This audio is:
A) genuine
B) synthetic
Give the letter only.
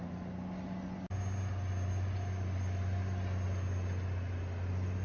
A